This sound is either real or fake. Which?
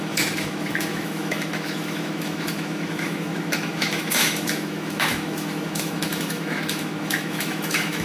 fake